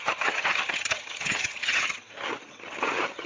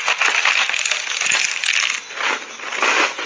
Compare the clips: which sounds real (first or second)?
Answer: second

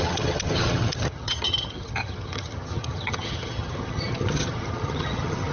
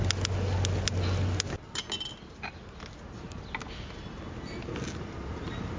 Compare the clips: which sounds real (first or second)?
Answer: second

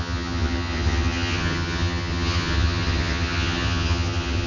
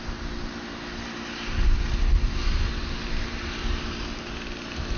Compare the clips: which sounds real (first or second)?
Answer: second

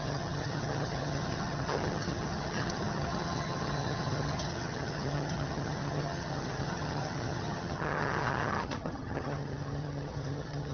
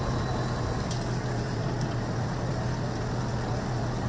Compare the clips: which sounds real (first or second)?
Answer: second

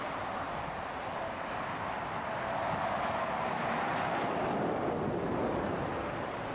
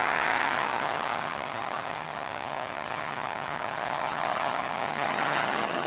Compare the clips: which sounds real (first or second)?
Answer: first